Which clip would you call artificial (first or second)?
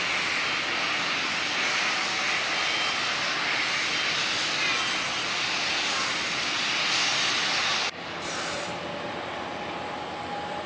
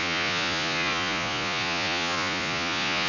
second